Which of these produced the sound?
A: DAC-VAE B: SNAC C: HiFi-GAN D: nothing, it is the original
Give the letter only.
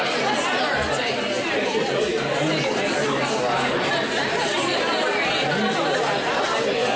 D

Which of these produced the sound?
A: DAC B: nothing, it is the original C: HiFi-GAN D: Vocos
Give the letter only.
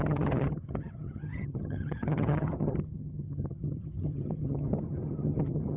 C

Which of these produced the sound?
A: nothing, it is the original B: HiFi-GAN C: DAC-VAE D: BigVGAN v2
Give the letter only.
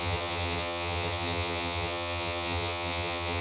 B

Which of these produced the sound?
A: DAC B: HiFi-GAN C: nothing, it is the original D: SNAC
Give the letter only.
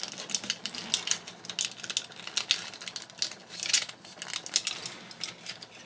C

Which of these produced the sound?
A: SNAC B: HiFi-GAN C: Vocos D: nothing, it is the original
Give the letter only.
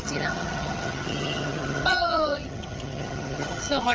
B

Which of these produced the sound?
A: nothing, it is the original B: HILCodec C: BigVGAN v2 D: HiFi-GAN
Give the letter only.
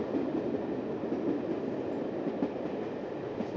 A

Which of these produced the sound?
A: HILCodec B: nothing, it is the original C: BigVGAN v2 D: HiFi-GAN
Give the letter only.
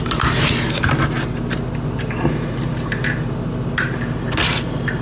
B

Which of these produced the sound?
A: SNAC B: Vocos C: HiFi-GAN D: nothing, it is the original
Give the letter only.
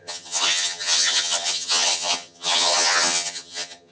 C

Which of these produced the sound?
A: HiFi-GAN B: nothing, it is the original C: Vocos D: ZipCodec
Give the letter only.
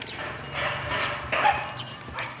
B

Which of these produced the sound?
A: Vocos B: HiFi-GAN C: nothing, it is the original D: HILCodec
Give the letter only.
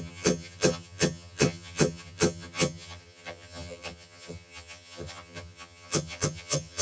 B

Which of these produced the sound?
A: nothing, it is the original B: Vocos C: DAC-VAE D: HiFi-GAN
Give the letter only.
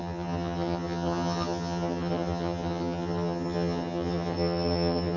D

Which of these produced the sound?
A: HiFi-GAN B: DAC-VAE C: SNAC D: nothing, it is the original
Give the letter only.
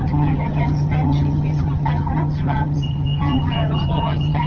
A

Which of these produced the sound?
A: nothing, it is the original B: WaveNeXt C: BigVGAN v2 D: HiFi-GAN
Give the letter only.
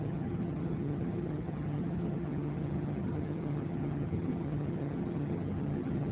D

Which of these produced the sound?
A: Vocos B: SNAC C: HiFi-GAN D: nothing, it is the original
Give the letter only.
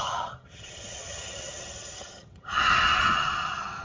C